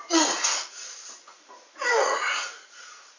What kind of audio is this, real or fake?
fake